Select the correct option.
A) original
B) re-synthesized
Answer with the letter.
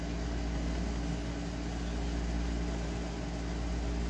A